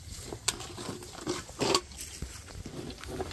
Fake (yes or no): no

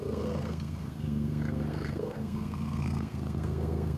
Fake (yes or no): yes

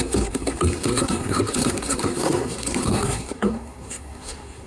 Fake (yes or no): yes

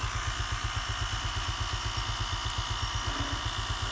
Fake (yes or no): no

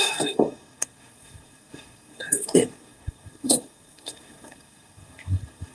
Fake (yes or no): yes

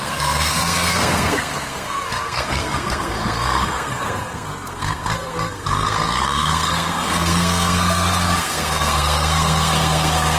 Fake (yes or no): yes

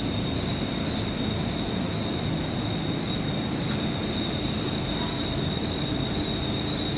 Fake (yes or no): no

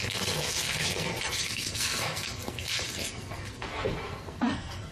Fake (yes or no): yes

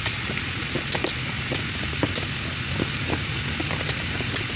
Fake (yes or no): no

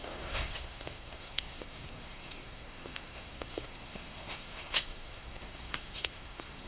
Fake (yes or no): yes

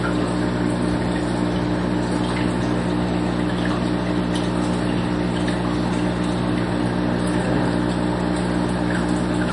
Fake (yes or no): no